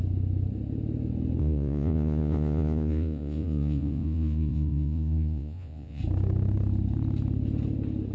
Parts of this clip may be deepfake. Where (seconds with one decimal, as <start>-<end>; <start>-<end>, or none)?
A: 1.4-6.0